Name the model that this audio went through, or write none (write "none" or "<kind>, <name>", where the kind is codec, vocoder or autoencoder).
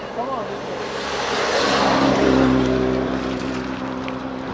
none